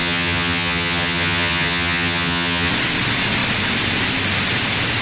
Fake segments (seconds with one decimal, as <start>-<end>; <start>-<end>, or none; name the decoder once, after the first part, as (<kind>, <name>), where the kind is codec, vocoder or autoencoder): 0.0-2.7 (vocoder, HiFi-GAN)